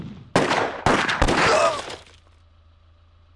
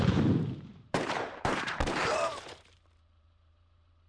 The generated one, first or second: second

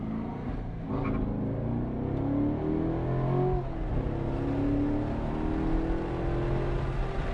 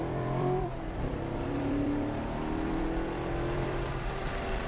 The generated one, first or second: second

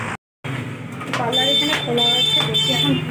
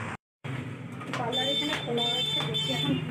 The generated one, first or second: second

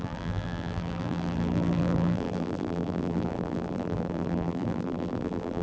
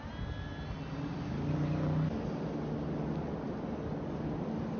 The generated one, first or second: first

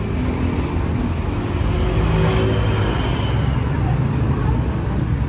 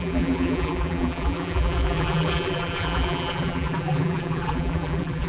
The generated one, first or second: second